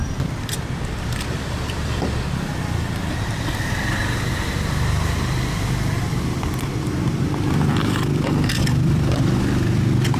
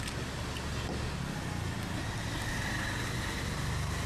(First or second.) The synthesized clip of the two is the first